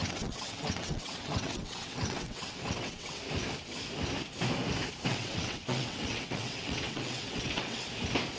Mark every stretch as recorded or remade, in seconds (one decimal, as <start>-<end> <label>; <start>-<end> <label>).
0.0-3.2 remade; 3.2-5.1 recorded; 5.1-7.8 remade; 7.8-8.4 recorded